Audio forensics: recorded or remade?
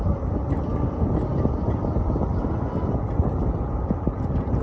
recorded